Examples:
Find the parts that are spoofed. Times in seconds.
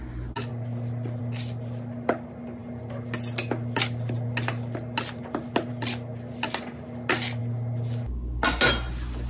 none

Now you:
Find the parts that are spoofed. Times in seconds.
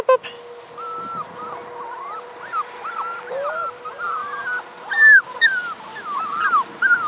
none